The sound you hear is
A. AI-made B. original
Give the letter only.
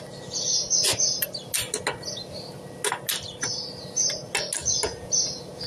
B